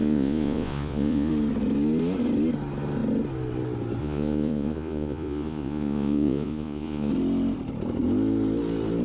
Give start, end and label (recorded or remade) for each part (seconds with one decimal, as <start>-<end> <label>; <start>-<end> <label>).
0.0-1.3 remade; 1.3-4.0 recorded; 4.0-7.1 remade; 7.1-9.0 recorded